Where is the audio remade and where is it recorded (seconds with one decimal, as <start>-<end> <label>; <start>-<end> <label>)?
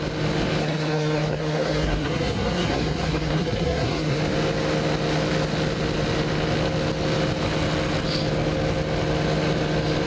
0.0-0.6 recorded; 0.6-4.2 remade; 4.2-10.1 recorded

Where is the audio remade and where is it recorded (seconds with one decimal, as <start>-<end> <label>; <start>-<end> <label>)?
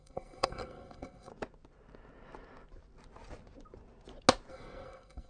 0.0-1.3 remade; 1.3-4.5 recorded; 4.5-5.3 remade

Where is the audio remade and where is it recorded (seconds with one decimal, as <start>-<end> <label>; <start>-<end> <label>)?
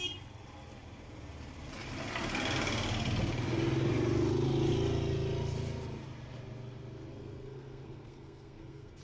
0.0-7.1 recorded; 7.1-9.0 remade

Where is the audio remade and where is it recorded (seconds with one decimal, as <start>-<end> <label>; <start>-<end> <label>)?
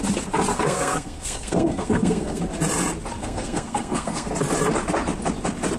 0.0-0.5 recorded; 0.5-2.4 remade; 2.4-3.2 recorded; 3.2-4.3 remade; 4.3-5.8 recorded